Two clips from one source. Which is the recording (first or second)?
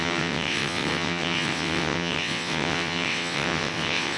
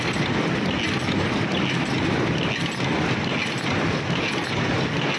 second